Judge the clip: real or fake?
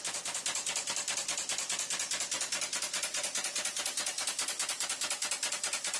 real